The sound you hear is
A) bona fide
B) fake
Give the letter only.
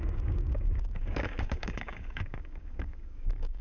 B